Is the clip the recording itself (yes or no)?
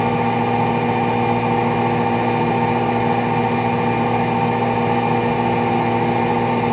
yes